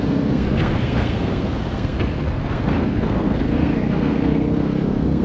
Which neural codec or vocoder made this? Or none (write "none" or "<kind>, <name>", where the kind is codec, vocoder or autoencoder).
codec, SNAC